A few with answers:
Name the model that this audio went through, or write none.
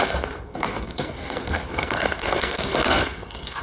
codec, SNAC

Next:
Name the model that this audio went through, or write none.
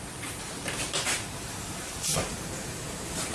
vocoder, BigVGAN v2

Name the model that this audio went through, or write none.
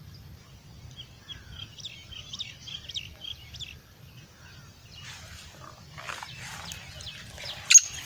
none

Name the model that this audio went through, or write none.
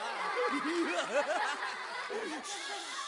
none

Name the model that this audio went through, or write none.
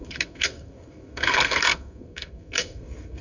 codec, SNAC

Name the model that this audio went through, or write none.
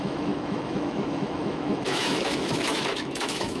autoencoder, DAC-VAE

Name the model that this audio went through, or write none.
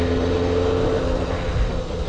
none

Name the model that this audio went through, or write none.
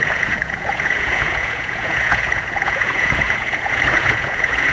vocoder, Vocos